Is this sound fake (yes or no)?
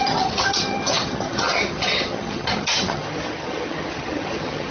yes